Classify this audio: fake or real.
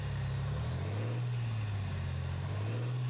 real